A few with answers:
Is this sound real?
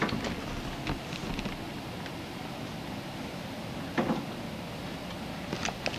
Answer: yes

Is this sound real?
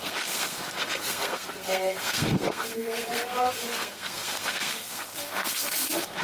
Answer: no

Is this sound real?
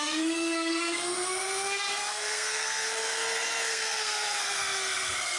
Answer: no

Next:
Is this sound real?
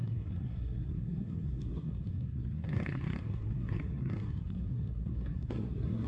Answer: no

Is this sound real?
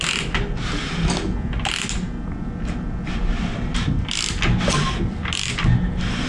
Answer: yes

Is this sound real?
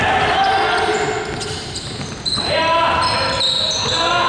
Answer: yes